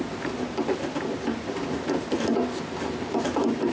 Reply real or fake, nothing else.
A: real